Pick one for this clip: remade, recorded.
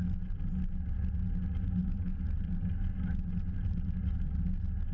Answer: recorded